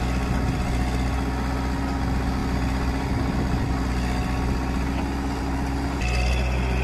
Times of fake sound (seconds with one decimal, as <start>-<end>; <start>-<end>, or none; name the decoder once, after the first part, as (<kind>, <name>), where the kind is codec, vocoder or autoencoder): none